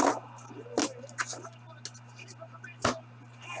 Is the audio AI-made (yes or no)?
no